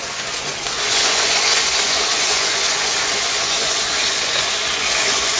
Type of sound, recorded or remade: remade